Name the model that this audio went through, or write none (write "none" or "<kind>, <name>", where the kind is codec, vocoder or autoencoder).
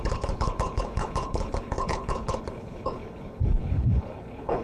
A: codec, HILCodec